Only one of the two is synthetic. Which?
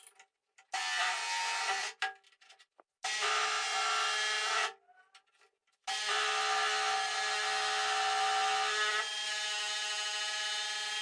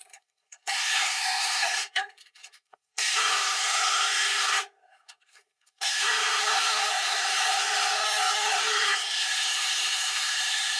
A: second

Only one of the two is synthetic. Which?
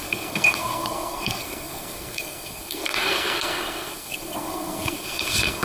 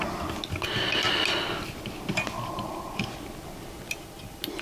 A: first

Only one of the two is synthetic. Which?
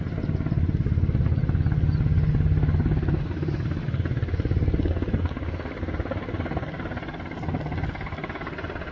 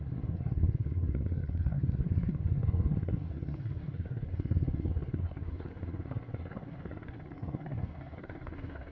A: second